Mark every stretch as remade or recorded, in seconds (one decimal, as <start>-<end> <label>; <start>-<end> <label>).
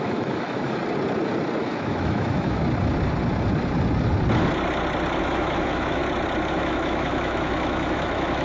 0.0-0.8 remade; 0.8-1.6 recorded; 1.6-2.6 remade; 2.6-5.2 recorded; 5.2-6.0 remade; 6.0-6.5 recorded; 6.5-8.4 remade